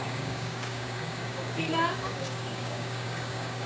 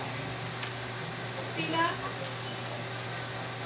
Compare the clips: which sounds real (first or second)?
second